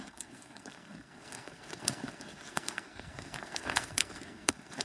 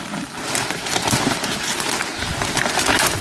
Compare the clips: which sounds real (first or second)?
second